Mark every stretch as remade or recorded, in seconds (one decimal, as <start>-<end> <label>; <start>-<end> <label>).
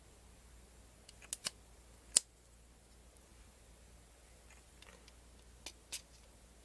0.0-6.6 recorded